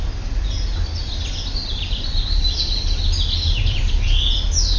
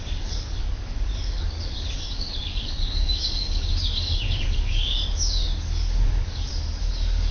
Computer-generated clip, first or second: second